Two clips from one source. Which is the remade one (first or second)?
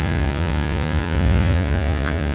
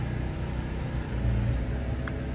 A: first